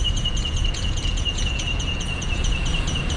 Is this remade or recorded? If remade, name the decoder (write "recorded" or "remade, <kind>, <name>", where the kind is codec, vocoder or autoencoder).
remade, vocoder, Vocos